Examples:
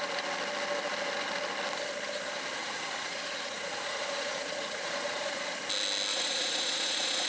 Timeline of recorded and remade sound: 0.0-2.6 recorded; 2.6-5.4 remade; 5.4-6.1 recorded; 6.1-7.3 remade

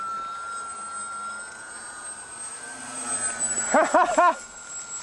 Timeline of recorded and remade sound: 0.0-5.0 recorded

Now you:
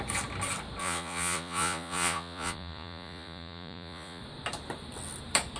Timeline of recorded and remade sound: 0.0-0.8 recorded; 0.8-4.2 remade; 4.2-5.6 recorded